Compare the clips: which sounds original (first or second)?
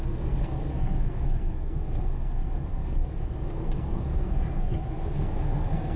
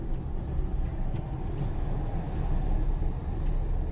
second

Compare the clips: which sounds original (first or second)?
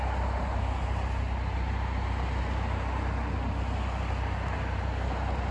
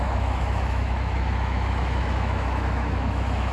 first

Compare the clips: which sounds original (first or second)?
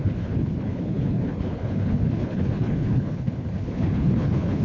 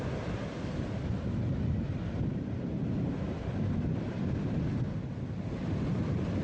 second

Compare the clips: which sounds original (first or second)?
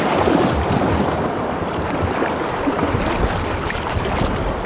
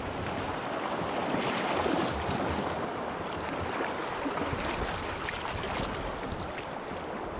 second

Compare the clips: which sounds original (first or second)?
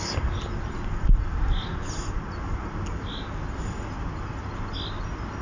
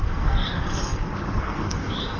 first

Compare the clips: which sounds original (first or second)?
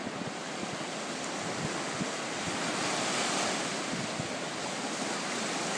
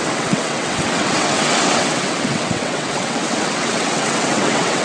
first